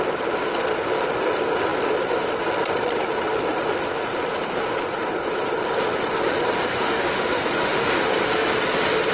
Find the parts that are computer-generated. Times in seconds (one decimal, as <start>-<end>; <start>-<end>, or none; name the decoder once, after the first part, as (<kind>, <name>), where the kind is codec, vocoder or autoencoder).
6.7-8.5 (autoencoder, DAC-VAE)